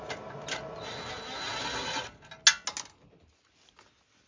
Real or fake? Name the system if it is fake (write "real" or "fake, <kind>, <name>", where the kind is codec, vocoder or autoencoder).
real